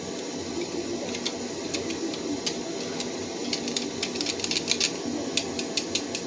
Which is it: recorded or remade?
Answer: recorded